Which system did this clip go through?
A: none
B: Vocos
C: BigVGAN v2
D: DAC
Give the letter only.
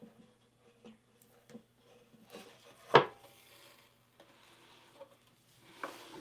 A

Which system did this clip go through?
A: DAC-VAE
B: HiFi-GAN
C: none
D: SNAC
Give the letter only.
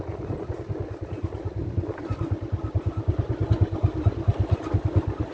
C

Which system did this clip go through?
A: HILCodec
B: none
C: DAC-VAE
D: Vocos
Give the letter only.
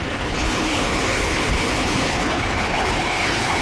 A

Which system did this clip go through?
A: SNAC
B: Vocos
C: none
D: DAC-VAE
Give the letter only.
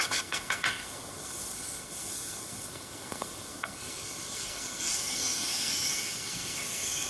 A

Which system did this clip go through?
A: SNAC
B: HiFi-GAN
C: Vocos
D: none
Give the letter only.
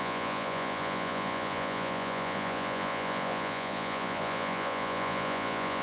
C